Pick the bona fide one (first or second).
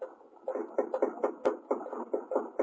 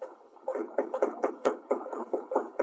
first